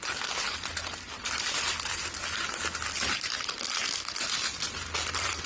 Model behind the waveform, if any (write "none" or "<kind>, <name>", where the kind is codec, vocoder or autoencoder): none